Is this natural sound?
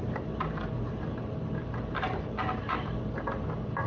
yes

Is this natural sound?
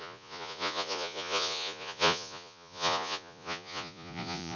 no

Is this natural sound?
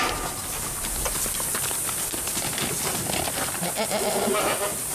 yes